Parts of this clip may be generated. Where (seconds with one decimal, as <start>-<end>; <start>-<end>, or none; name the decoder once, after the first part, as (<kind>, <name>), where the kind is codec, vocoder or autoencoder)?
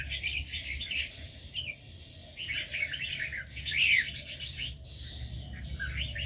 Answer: 0.6-1.5 (vocoder, BigVGAN v2)